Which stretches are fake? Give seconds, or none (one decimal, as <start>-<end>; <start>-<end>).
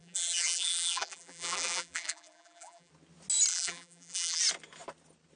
0.0-2.9; 3.5-4.4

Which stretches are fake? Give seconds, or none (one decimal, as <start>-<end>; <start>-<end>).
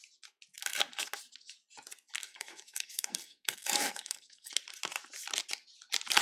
2.2-4.5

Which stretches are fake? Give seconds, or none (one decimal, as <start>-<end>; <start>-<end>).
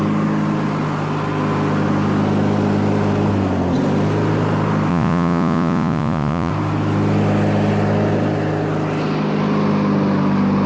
4.9-6.5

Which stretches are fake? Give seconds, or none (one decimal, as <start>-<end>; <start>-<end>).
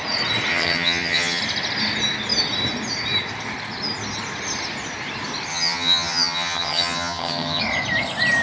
0.5-1.4; 5.5-7.6